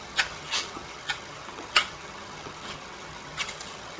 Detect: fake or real fake